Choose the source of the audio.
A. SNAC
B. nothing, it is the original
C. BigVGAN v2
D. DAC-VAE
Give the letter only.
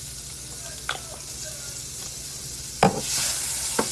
B